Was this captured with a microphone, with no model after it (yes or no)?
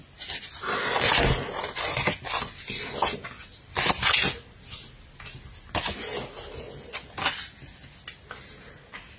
yes